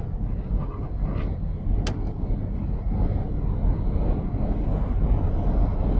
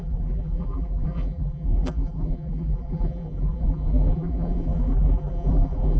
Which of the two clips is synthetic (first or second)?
second